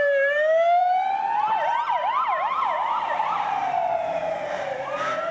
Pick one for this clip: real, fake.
fake